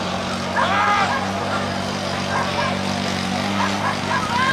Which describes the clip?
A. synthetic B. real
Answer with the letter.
B